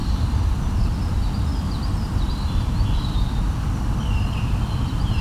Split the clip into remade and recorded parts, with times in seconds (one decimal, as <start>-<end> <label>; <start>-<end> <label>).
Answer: 0.0-5.2 remade